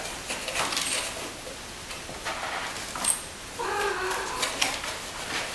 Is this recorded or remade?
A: recorded